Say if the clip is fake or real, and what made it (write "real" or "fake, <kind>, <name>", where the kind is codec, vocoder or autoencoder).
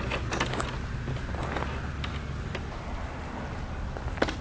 real